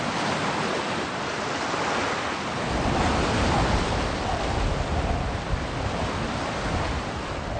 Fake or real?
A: real